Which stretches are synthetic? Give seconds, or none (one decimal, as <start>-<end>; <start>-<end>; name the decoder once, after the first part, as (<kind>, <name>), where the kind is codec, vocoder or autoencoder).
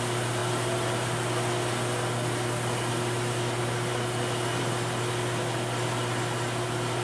none